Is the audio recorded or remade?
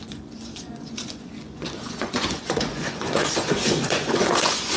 remade